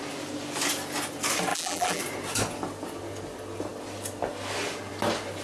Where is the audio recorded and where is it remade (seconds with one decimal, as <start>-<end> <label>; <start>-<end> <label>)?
0.0-1.5 recorded; 1.5-2.0 remade; 2.0-5.4 recorded